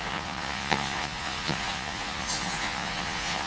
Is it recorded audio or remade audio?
remade